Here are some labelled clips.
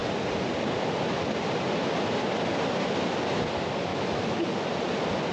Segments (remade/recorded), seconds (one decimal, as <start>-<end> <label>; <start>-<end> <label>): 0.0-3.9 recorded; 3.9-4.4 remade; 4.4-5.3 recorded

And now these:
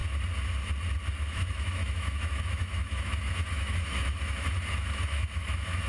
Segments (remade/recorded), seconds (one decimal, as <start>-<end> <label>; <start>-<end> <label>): 0.0-1.1 recorded; 1.1-5.9 remade

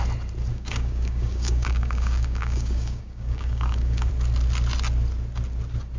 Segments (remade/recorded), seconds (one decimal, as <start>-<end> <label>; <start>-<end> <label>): 0.0-0.5 recorded; 0.5-4.1 remade; 4.1-6.0 recorded

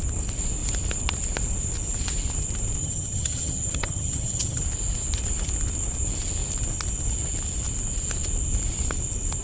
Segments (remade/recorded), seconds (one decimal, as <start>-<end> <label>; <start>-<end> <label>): 0.0-2.8 recorded; 2.8-4.6 remade; 4.6-9.4 recorded